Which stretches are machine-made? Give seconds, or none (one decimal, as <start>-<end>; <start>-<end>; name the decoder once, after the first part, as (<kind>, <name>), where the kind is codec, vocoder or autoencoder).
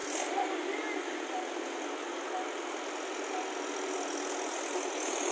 none